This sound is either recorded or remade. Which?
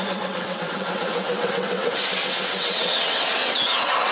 remade